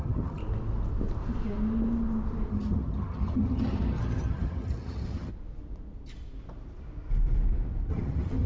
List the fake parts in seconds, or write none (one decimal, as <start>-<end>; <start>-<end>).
0.0-0.4; 2.5-5.3; 7.9-8.5